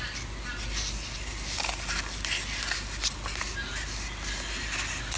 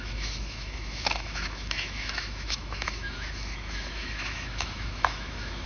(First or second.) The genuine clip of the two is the first